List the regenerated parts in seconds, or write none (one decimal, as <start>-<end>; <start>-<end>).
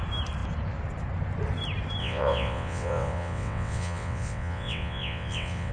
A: 2.0-5.7